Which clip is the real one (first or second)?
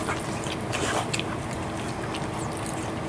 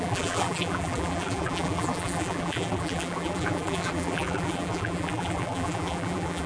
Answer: first